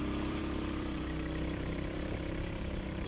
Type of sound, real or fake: fake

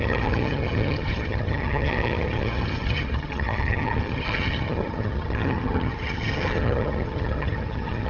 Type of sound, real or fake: fake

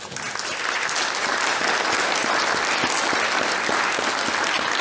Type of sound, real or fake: real